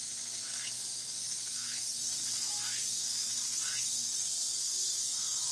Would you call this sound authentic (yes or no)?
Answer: no